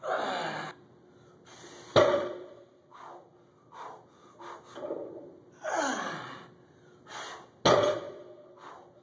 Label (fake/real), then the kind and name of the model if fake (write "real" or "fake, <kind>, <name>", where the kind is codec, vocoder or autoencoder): real